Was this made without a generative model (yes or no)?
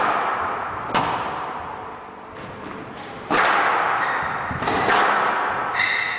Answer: yes